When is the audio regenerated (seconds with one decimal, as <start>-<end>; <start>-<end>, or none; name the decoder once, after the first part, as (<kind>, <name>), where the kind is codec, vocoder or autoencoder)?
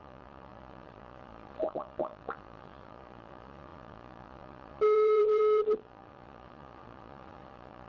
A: 0.0-7.9 (vocoder, Vocos)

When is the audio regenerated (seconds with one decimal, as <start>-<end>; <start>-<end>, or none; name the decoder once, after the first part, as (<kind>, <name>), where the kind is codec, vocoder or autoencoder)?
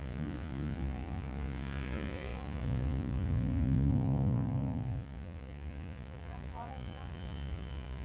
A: 0.0-8.0 (vocoder, Vocos)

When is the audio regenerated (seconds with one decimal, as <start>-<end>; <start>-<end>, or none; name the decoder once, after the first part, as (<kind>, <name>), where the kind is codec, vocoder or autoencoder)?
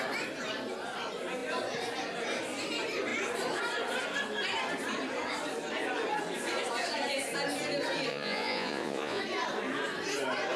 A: 8.1-9.2 (vocoder, Vocos)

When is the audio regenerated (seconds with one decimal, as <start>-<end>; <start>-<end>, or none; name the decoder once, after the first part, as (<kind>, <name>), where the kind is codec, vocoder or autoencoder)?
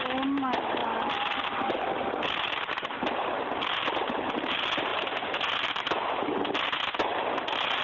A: none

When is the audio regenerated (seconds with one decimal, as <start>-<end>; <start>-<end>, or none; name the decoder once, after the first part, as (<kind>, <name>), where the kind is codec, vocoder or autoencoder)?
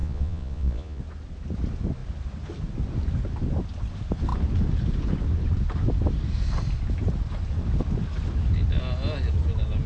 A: 0.0-1.0 (vocoder, Vocos)